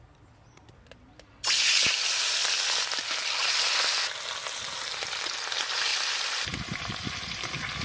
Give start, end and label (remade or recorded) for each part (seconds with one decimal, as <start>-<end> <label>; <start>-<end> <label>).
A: 0.0-7.8 recorded